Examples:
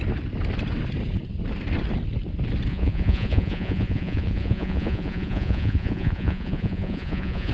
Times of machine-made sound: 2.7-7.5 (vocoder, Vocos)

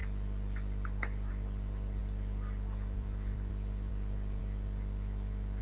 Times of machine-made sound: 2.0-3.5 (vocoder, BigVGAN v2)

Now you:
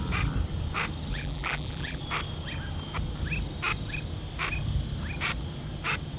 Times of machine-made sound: 1.1-2.0 (vocoder, BigVGAN v2)